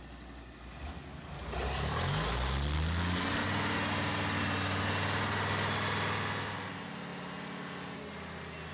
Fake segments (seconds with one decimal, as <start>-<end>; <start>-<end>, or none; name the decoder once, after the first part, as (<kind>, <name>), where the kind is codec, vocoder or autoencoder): none